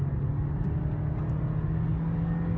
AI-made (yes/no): no